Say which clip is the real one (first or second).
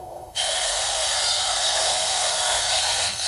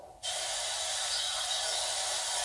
second